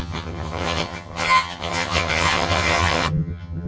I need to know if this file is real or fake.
fake